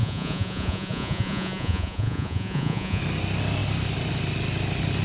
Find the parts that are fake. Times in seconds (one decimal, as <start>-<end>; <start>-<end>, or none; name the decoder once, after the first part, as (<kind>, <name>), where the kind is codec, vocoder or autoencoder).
0.0-3.0 (vocoder, Vocos)